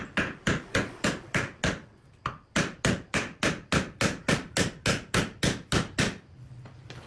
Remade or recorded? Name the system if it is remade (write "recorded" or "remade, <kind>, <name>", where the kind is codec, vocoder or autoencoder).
recorded